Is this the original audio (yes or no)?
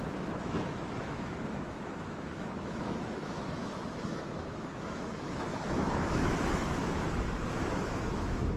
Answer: no